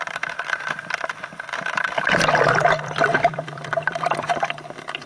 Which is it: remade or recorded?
remade